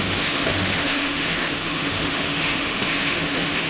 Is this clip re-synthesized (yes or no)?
yes